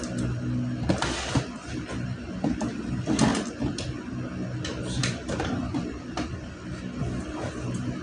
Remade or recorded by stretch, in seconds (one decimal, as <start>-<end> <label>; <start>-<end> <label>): 0.0-5.0 recorded; 5.0-8.0 remade